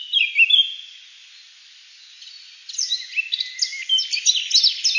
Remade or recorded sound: recorded